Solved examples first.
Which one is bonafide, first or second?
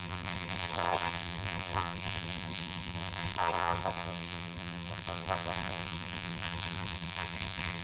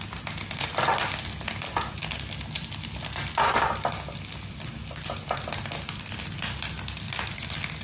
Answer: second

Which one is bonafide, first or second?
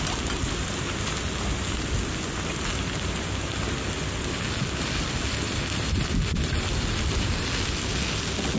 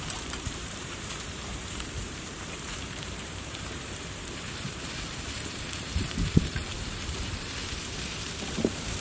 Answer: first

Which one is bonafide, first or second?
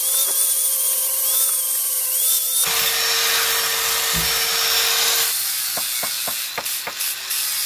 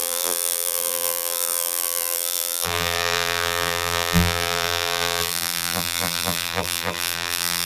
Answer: first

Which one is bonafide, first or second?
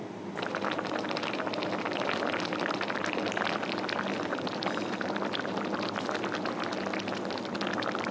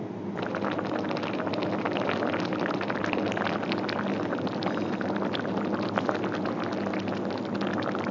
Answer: second